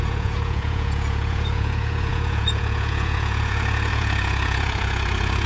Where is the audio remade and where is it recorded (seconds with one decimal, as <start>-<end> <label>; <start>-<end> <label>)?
0.0-5.5 remade